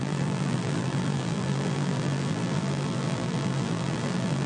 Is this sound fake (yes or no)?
yes